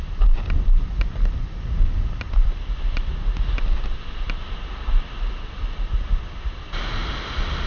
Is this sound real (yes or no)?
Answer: yes